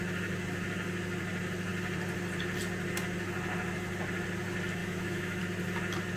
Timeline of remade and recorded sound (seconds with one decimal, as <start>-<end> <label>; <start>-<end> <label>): 0.0-4.8 recorded; 4.8-5.4 remade; 5.4-6.2 recorded